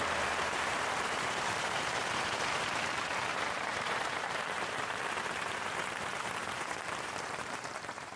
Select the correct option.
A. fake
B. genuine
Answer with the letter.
A